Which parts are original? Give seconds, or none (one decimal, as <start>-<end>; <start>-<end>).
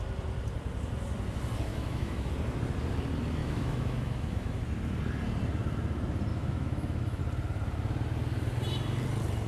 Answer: 0.0-1.7; 2.3-3.4; 4.6-6.3; 7.2-9.5